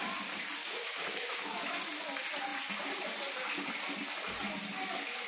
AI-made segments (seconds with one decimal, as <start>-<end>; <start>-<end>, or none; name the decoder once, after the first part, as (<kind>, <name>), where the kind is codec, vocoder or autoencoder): 0.6-1.8 (autoencoder, DAC-VAE)